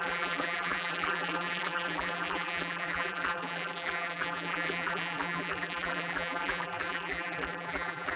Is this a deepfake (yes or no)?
yes